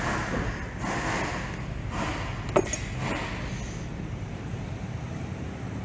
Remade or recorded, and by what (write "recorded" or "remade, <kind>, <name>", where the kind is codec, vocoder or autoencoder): recorded